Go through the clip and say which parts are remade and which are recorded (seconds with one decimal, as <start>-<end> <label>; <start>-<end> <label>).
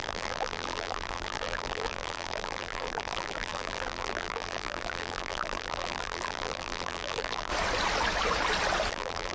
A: 0.0-7.5 remade; 7.5-8.9 recorded; 8.9-9.3 remade